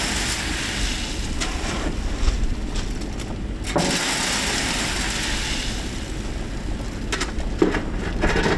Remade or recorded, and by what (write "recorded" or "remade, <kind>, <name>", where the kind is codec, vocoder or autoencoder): recorded